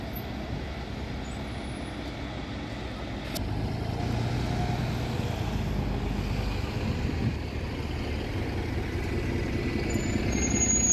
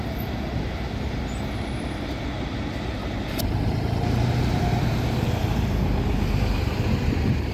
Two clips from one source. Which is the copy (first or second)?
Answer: second